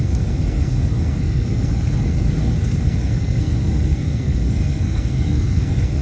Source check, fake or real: fake